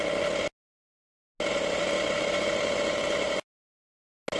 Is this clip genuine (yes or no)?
yes